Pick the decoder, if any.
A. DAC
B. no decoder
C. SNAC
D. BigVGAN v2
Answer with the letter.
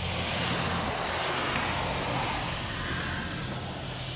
B